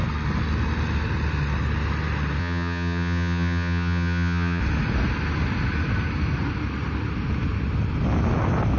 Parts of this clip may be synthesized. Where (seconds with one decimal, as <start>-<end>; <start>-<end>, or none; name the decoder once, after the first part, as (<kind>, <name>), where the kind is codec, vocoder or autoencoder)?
2.4-4.6 (vocoder, HiFi-GAN)